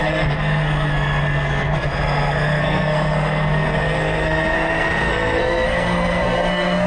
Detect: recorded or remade remade